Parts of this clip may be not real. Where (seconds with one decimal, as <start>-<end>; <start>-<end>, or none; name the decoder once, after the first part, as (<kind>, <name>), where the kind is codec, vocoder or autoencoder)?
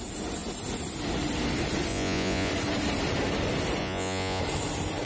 1.9-2.5 (vocoder, Vocos); 3.8-4.4